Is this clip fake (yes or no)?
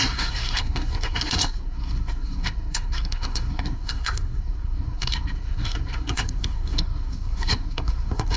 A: yes